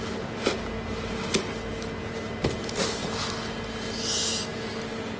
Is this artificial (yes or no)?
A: no